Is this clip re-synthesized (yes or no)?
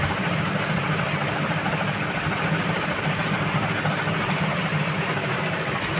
no